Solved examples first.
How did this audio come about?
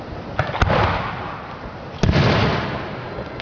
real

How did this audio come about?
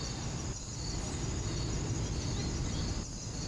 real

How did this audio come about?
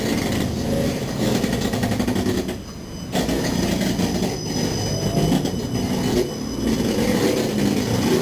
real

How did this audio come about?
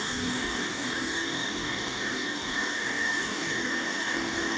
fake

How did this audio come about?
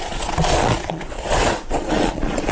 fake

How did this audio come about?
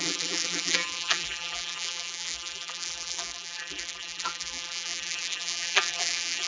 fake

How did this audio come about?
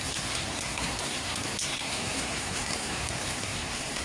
fake